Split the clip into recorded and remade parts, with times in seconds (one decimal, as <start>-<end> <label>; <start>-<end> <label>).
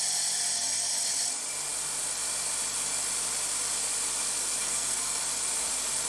0.0-4.6 recorded; 4.6-5.2 remade; 5.2-6.1 recorded